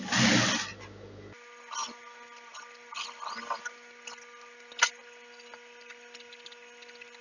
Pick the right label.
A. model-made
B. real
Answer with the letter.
B